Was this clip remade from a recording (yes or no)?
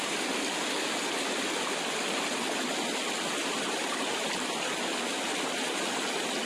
no